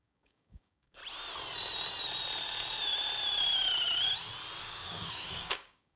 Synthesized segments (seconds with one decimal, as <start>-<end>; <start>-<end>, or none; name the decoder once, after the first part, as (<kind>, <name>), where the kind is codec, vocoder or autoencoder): 0.0-1.0 (codec, DAC); 4.6-6.0